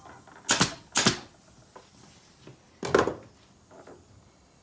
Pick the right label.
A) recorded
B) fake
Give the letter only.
A